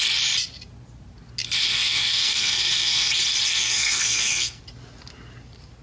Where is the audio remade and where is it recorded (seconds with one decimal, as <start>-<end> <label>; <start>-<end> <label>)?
0.0-1.7 recorded; 1.7-3.1 remade; 3.1-3.5 recorded; 3.5-4.6 remade; 4.6-5.8 recorded